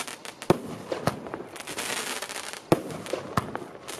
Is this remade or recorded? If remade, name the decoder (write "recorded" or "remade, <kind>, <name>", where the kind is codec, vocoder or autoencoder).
recorded